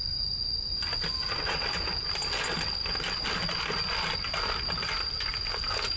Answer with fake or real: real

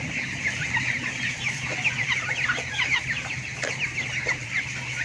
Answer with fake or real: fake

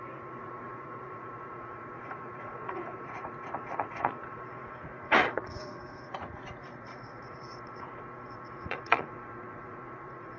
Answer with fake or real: fake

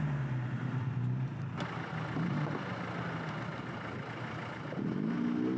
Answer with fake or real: real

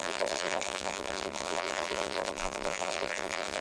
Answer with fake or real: fake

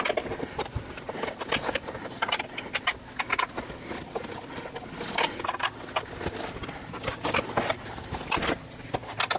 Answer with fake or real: real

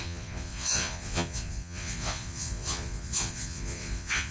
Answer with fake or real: fake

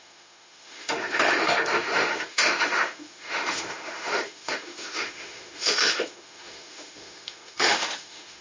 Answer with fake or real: fake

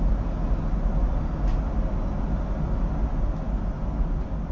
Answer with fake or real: real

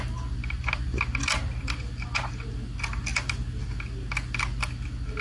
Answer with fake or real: real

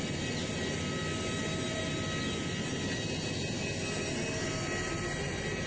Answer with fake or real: real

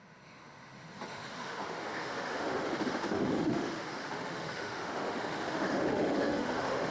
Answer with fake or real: fake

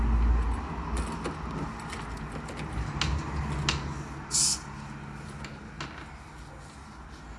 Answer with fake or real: real